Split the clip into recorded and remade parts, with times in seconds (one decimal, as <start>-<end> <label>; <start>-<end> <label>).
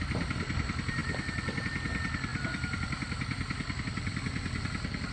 0.0-5.1 recorded